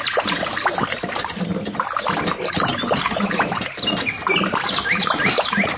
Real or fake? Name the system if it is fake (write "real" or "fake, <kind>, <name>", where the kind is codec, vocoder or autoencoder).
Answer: real